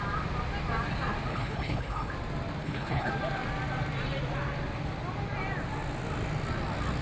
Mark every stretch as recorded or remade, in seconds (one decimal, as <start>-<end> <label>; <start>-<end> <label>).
0.0-1.3 recorded; 1.3-2.1 remade; 2.1-2.6 recorded; 2.6-3.1 remade; 3.1-7.0 recorded